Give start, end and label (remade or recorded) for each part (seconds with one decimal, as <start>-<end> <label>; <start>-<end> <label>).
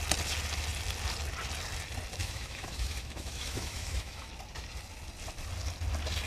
0.0-2.2 recorded; 2.2-4.3 remade; 4.3-6.3 recorded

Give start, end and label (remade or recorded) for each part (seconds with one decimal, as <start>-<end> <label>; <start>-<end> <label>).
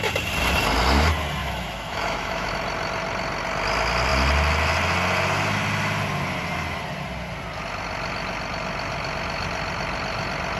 0.0-1.4 recorded; 1.4-2.5 remade; 2.5-10.6 recorded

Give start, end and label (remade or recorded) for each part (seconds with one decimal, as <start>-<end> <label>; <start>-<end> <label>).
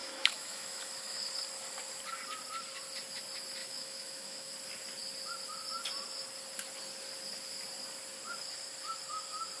0.0-1.3 remade; 1.3-3.6 recorded; 3.6-4.5 remade; 4.5-9.6 recorded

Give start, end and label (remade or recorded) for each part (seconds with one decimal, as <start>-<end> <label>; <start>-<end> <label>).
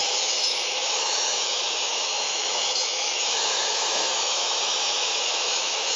0.0-6.0 remade